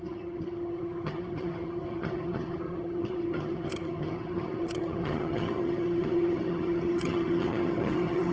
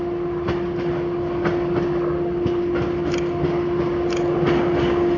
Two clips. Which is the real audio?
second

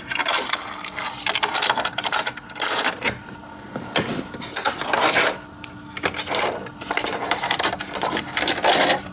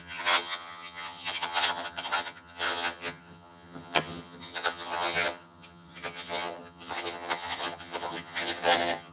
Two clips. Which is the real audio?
first